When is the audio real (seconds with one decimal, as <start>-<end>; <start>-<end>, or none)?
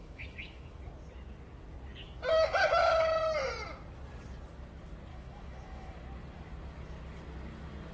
0.8-2.3; 3.2-5.1; 6.0-7.9